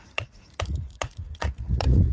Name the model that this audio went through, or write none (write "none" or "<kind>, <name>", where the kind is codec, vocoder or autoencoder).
vocoder, Vocos